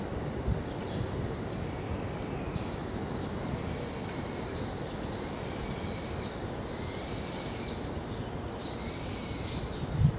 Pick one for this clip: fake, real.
real